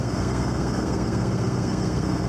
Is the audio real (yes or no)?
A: no